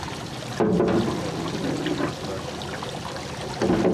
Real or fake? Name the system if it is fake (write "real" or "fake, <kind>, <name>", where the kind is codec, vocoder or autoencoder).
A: real